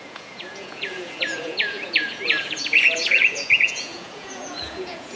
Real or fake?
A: fake